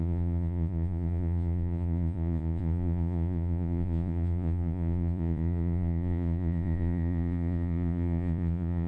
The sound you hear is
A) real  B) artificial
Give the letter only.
B